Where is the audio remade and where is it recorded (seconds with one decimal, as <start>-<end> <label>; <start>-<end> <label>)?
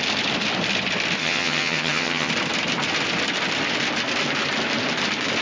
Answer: 0.0-1.2 recorded; 1.2-2.3 remade; 2.3-5.4 recorded